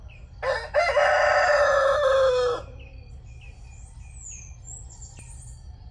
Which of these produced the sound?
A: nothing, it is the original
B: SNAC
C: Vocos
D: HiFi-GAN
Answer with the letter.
A